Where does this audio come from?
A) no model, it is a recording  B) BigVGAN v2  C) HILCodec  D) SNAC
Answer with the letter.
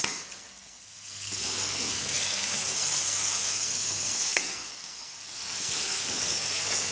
D